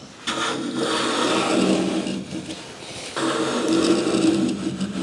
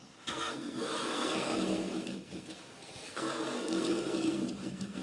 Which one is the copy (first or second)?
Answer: second